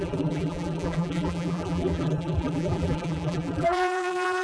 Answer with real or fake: fake